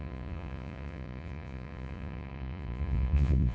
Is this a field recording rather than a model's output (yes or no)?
no